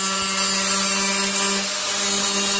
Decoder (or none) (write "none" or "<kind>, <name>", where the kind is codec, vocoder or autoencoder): none